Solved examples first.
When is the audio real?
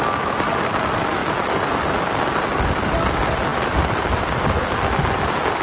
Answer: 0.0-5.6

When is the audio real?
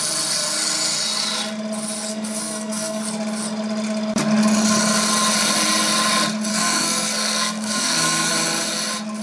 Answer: 0.0-2.1; 3.0-6.5; 8.3-9.2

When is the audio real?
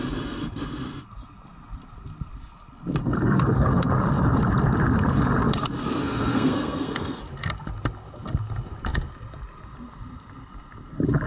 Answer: 0.0-3.0; 3.9-6.0; 7.2-11.3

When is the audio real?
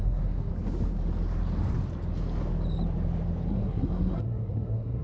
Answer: 0.5-3.5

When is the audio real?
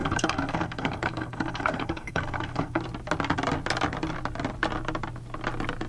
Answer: 2.8-5.9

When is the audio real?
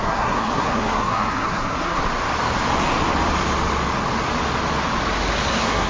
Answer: 2.0-5.5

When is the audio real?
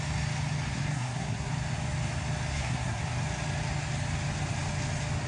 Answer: 0.0-0.7; 1.5-2.5; 3.0-5.3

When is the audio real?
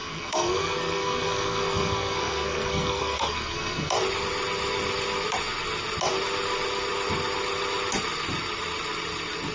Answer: 3.9-9.5